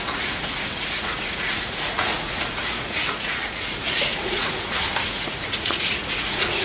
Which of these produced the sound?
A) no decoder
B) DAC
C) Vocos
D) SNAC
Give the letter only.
C